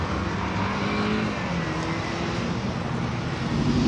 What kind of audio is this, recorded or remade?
recorded